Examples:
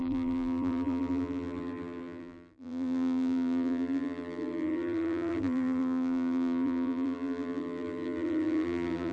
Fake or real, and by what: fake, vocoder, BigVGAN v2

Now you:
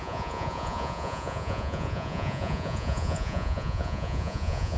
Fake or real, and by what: fake, vocoder, Vocos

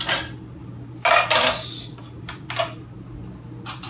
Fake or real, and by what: real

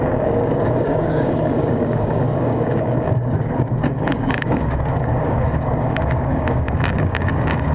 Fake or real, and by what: fake, codec, DAC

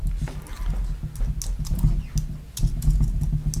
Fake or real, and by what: real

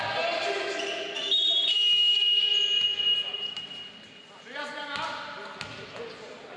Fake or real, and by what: real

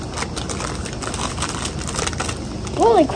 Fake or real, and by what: real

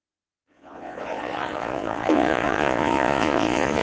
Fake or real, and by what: fake, vocoder, Vocos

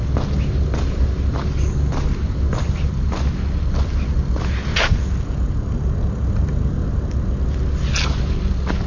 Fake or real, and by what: real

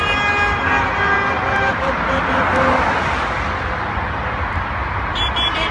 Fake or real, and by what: real